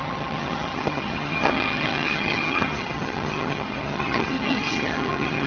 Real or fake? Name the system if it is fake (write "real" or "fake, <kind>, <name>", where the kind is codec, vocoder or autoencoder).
fake, vocoder, HiFi-GAN